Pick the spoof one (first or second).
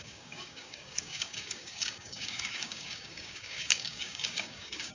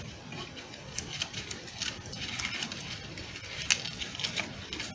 first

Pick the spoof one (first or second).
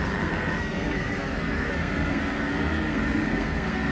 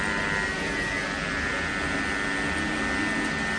first